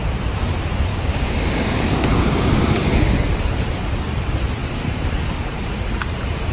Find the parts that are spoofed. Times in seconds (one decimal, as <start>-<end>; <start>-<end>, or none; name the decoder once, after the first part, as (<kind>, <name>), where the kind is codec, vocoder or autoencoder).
0.9-3.2 (codec, DAC)